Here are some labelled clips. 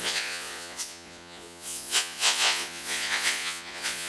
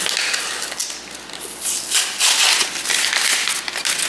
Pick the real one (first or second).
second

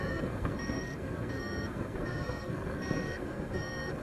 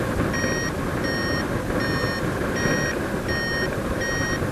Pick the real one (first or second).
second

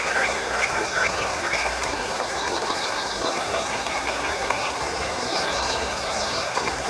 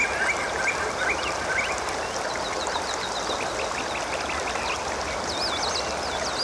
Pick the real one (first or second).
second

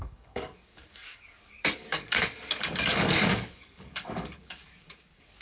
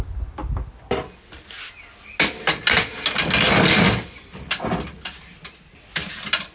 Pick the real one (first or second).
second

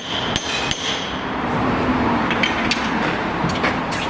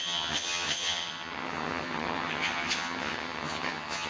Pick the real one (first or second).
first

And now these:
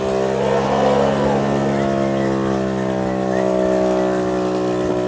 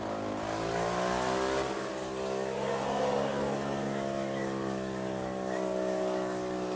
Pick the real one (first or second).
first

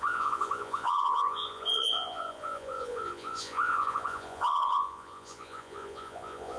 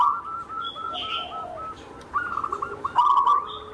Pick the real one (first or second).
second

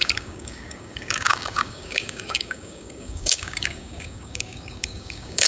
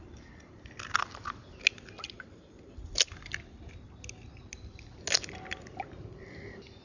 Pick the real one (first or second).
second